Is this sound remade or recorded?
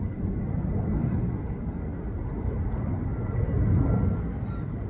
recorded